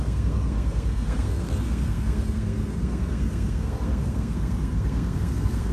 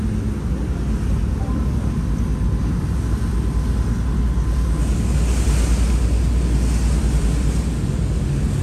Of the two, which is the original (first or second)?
second